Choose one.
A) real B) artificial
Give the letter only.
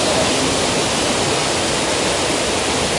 A